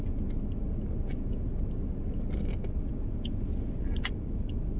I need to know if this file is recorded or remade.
recorded